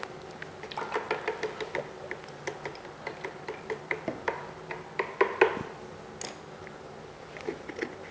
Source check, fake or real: real